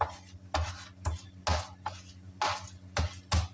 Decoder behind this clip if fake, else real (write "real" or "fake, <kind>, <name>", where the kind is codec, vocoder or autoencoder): real